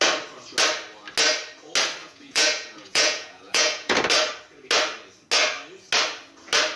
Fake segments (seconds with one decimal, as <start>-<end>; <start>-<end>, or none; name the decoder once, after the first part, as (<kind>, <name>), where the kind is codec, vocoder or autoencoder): 2.0-4.0 (vocoder, Vocos)